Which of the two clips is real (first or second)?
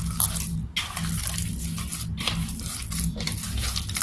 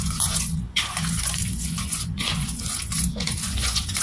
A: first